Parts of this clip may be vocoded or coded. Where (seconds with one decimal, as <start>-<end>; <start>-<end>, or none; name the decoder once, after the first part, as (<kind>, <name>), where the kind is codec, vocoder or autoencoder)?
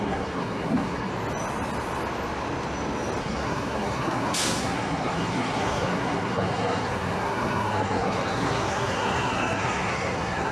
0.0-1.1 (codec, SNAC); 3.2-10.5